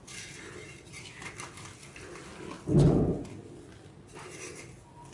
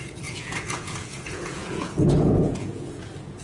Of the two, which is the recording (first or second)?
first